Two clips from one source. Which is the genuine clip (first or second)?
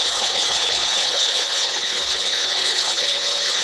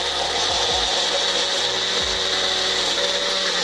second